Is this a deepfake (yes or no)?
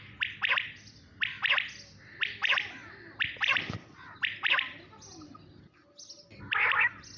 no